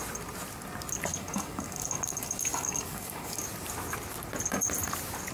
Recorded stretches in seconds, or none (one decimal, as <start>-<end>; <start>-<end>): 0.0-1.1; 3.4-5.3